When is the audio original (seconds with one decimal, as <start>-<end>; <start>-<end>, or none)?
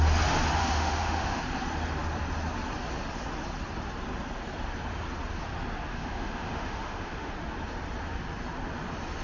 0.0-0.6; 1.4-5.9; 7.3-9.2